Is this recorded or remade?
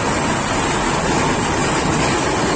recorded